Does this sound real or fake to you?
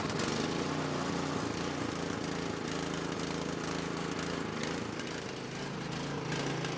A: real